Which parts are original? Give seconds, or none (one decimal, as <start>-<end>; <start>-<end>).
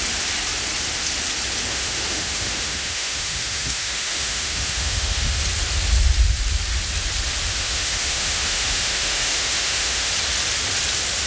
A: 0.0-1.7; 5.4-7.5; 10.1-11.3